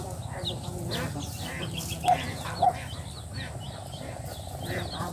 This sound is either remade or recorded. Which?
recorded